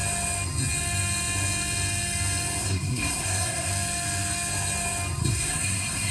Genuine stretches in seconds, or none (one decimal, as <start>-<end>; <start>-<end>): 0.0-2.6; 3.7-5.2